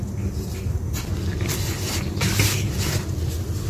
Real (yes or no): yes